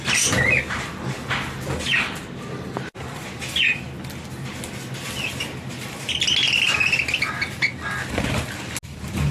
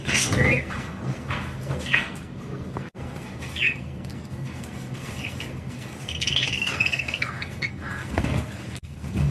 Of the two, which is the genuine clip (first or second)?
first